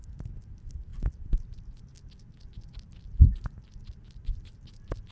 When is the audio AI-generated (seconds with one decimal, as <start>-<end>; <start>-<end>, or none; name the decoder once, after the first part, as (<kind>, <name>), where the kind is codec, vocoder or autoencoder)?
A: none